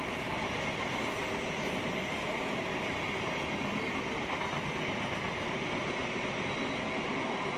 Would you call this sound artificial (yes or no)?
no